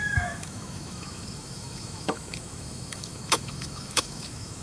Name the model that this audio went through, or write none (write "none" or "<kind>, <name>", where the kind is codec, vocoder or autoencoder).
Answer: autoencoder, DAC-VAE